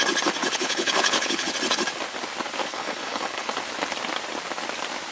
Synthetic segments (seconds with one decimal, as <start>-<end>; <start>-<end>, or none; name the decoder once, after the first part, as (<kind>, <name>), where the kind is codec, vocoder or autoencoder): 0.4-1.5 (codec, HILCodec); 2.6-3.5

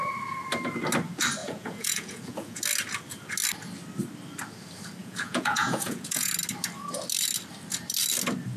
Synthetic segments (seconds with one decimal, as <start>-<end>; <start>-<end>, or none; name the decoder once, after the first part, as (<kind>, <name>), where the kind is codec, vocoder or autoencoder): 1.4-2.6 (vocoder, Vocos); 5.0-6.3

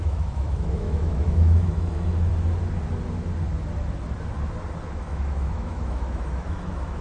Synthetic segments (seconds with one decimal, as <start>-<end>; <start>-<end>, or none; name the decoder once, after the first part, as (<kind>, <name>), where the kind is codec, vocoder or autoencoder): 0.0-2.3 (autoencoder, DAC-VAE); 4.9-7.0

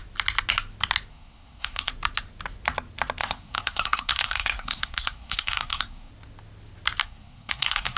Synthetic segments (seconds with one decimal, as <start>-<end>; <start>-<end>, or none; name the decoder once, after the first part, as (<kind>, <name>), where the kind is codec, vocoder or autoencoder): 1.1-1.9 (codec, SNAC); 3.2-6.1; 7.0-8.0

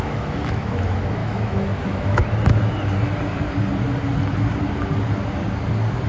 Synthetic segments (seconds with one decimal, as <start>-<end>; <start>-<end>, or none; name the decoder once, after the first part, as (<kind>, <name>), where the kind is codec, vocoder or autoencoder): 0.0-2.2 (autoencoder, DAC-VAE)

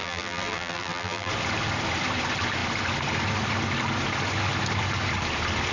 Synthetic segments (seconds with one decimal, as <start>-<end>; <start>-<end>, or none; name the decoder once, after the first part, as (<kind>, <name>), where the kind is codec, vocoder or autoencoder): 0.0-1.3 (vocoder, BigVGAN v2)

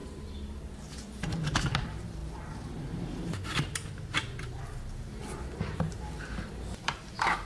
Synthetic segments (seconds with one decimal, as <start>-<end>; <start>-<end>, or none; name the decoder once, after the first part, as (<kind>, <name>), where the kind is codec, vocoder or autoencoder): 0.0-7.5 (vocoder, BigVGAN v2)

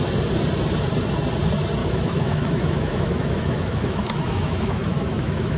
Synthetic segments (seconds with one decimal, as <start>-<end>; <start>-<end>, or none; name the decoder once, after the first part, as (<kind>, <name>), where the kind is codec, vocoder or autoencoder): 1.8-5.6 (autoencoder, DAC-VAE)